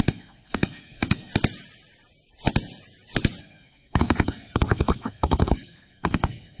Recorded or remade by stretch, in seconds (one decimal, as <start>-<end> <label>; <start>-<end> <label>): 0.0-1.3 remade; 1.3-3.4 recorded; 3.4-6.6 remade

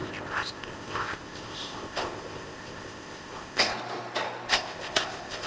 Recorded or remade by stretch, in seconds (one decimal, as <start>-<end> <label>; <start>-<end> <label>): 0.0-3.7 remade; 3.7-4.5 recorded; 4.5-5.5 remade

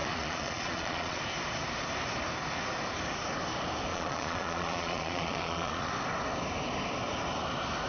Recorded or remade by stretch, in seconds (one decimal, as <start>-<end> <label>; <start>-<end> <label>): 0.0-1.2 remade; 1.2-3.9 recorded; 3.9-5.9 remade; 5.9-7.9 recorded

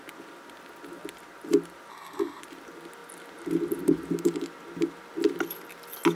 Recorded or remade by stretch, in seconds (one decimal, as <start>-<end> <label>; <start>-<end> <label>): 0.0-1.9 recorded; 1.9-2.4 remade; 2.4-6.2 recorded

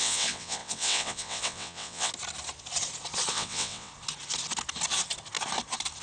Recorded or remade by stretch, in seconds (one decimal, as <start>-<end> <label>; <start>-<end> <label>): 0.0-2.1 remade; 2.1-3.3 recorded; 3.3-3.9 remade; 3.9-6.0 recorded

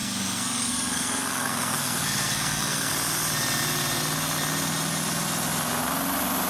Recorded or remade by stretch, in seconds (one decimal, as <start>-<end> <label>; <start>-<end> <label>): 0.0-2.9 remade; 2.9-6.5 recorded